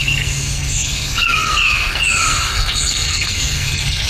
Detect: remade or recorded remade